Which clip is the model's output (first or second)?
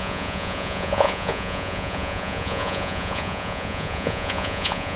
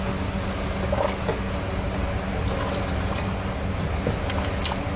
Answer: first